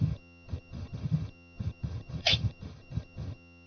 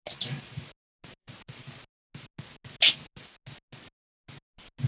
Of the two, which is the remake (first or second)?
first